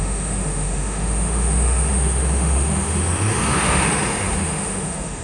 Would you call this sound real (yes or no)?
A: no